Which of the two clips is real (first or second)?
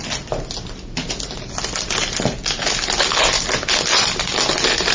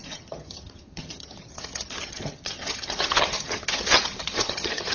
first